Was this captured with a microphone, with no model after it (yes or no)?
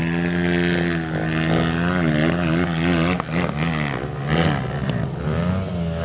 yes